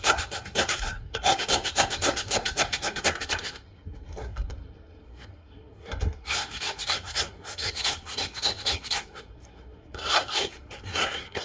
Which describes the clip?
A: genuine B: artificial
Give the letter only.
B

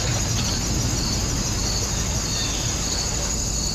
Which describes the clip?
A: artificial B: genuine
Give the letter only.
B